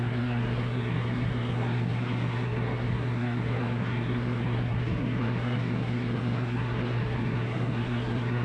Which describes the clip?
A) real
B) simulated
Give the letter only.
B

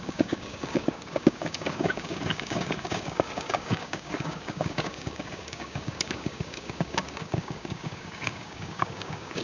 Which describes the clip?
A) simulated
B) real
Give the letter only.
A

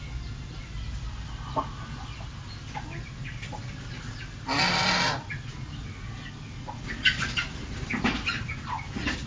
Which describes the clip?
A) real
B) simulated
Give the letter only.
A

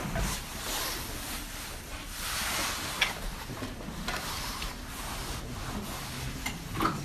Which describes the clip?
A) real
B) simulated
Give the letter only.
A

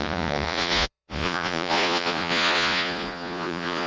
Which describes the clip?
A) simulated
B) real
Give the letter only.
A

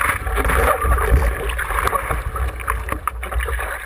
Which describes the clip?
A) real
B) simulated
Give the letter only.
A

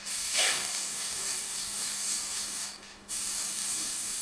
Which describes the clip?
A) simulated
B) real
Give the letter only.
A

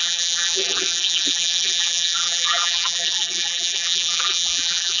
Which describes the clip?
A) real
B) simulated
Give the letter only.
B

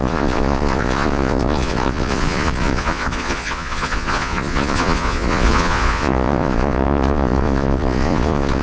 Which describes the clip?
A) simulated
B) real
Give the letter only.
A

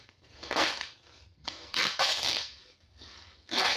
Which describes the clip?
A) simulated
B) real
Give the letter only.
A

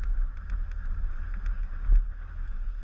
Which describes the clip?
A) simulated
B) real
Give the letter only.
B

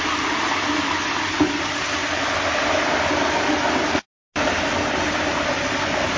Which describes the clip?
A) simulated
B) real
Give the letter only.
B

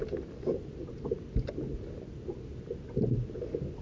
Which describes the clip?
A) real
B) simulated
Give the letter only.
A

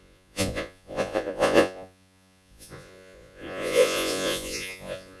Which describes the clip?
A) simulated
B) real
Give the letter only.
A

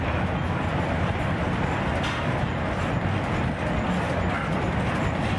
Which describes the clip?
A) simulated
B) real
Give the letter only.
B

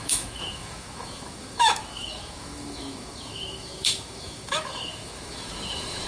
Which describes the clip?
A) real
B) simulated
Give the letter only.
B